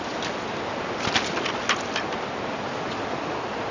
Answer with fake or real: real